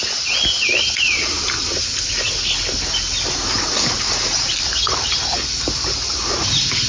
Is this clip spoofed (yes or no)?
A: no